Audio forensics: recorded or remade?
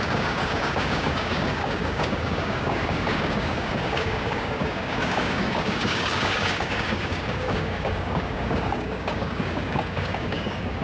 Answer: remade